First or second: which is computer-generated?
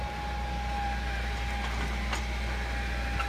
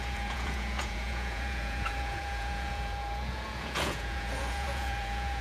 second